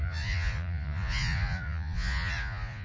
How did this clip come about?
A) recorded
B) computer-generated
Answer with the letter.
B